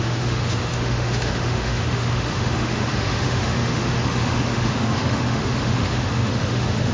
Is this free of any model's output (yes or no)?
no